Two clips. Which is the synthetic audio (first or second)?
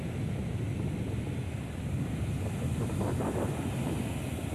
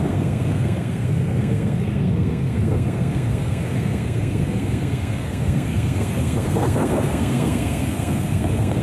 second